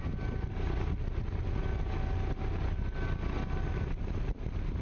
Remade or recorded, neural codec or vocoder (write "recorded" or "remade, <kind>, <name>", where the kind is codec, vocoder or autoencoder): recorded